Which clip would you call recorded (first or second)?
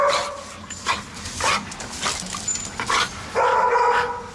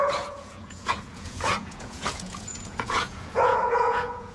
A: first